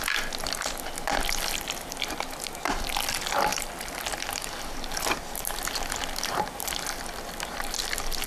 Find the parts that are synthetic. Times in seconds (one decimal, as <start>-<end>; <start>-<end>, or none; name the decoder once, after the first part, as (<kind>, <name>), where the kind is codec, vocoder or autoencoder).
none